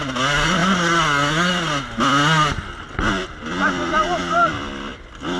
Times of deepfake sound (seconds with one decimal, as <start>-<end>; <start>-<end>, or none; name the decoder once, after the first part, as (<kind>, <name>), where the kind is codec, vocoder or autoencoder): none

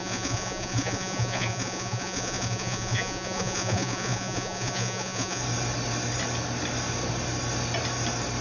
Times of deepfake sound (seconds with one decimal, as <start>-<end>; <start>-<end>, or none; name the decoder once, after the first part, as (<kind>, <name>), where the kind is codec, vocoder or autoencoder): 0.0-5.4 (vocoder, Vocos)